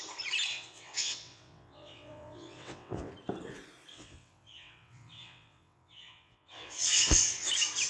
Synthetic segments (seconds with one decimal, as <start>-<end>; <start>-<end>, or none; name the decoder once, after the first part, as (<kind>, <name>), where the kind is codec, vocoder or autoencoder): 0.5-3.1 (vocoder, WaveNeXt); 3.9-7.5